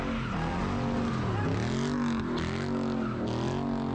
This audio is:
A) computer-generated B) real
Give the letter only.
B